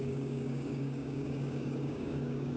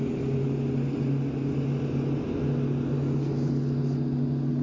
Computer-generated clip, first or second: first